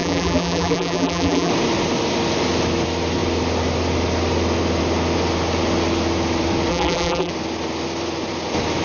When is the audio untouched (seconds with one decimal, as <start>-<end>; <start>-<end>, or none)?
1.5-6.7; 7.3-8.8